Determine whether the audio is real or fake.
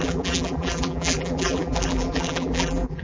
fake